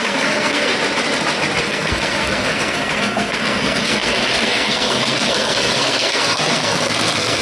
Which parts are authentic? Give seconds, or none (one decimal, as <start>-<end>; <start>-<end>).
0.7-1.6